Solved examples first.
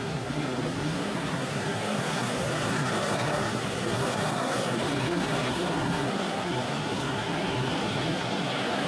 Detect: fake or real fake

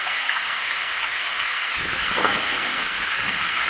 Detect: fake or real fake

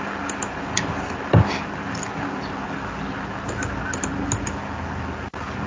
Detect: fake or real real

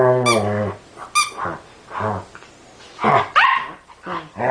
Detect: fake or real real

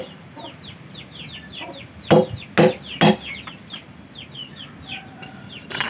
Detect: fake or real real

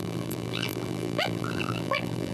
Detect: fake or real fake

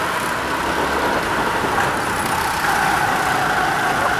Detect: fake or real real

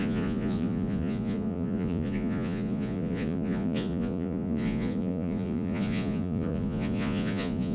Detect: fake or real fake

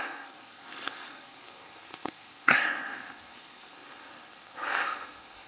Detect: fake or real fake